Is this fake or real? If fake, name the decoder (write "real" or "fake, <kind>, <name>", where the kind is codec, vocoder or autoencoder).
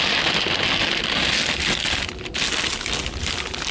real